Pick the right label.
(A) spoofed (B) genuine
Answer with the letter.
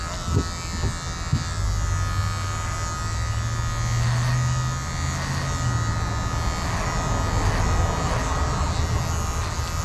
B